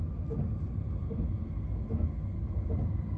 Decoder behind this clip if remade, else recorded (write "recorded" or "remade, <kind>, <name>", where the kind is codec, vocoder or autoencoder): recorded